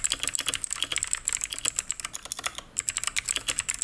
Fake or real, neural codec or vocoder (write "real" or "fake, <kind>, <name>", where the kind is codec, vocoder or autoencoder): real